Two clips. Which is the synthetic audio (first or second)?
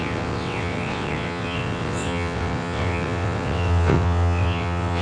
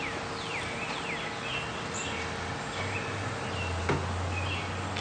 first